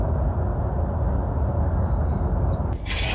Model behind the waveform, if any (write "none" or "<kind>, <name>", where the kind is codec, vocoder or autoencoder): none